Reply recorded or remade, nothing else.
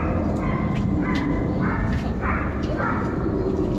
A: remade